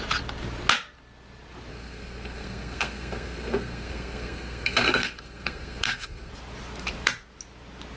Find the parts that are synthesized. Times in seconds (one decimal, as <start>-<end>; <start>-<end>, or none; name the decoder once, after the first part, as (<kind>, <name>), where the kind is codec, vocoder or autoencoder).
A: 1.7-6.3 (codec, SNAC)